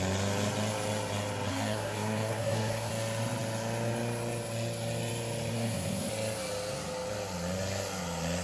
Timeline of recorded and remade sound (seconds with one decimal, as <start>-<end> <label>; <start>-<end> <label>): 0.0-1.5 recorded; 1.5-2.9 remade; 2.9-5.5 recorded; 5.5-6.1 remade; 6.1-8.4 recorded